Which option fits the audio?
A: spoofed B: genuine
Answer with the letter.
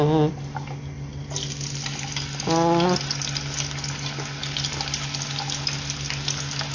B